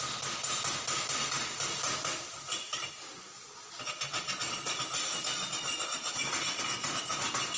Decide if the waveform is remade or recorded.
recorded